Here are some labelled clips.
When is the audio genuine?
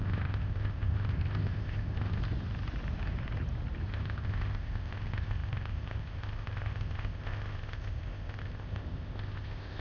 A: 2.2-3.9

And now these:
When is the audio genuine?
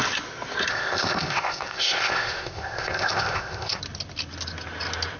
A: 0.0-0.7; 3.8-5.2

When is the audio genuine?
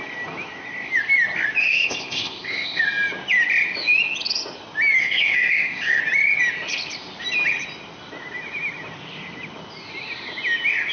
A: 0.0-1.6; 2.8-5.0; 6.0-10.9